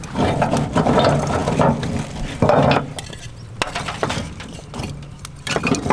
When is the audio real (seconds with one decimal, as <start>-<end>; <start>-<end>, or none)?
0.0-5.9